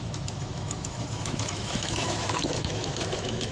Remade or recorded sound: remade